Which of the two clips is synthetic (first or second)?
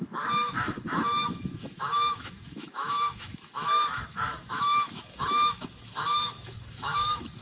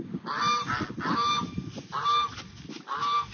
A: first